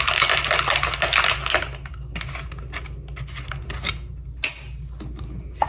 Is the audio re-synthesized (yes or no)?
no